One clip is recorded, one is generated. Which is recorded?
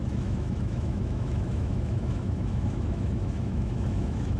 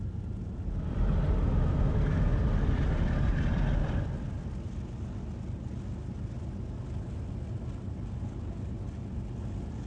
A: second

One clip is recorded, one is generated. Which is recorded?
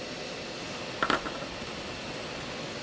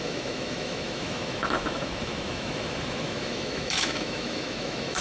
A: first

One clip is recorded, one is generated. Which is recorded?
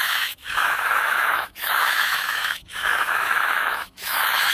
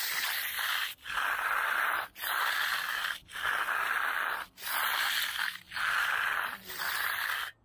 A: second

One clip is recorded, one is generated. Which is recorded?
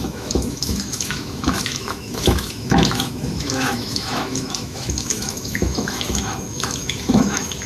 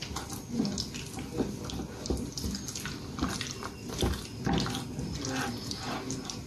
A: second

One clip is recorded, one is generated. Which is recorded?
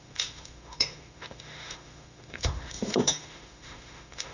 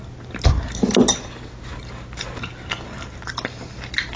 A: second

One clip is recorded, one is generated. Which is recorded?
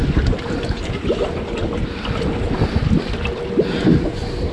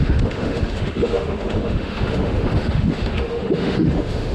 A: first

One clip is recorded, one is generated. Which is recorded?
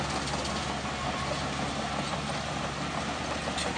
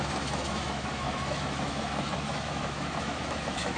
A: first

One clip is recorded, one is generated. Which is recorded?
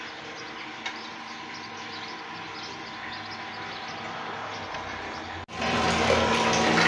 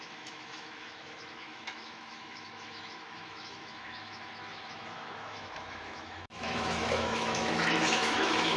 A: first